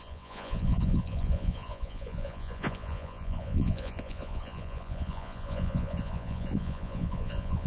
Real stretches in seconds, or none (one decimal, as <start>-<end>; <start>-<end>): none